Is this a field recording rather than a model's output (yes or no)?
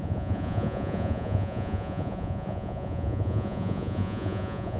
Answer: no